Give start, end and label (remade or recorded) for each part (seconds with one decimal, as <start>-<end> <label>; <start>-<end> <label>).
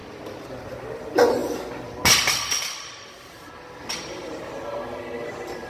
0.0-5.7 recorded